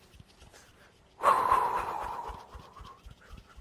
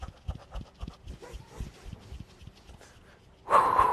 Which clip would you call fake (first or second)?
first